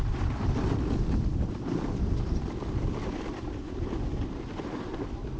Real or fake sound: real